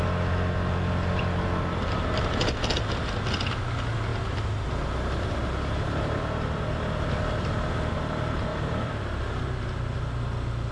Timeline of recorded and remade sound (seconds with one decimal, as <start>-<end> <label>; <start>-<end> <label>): 0.0-8.5 recorded; 8.5-9.4 remade; 9.4-10.7 recorded